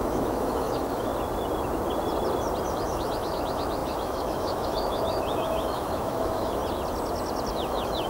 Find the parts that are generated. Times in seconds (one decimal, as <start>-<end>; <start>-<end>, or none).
0.0-1.1; 2.7-6.6; 7.5-8.1

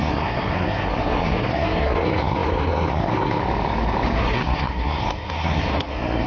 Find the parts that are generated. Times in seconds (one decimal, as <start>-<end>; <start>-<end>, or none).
0.0-3.4; 4.2-6.3

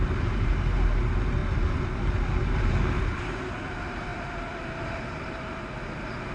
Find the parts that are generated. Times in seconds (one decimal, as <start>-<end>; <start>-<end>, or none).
none

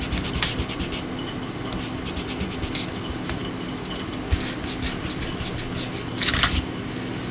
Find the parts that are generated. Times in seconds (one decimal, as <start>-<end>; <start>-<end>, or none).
none

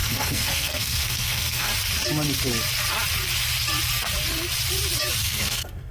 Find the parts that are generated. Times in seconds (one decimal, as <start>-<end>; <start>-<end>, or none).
0.0-1.7; 5.2-5.9

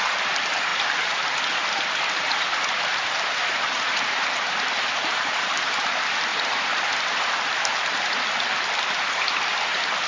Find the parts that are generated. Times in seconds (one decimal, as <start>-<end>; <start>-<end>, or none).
0.0-10.1